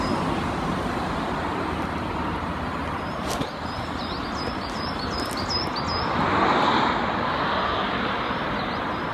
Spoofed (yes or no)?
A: no